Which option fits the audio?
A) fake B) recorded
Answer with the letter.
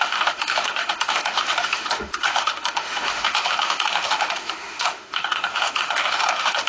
A